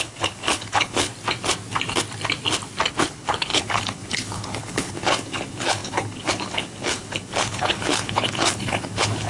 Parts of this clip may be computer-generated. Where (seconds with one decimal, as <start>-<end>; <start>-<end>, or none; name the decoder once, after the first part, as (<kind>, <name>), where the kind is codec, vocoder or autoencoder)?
0.0-1.1 (codec, HILCodec); 2.9-9.3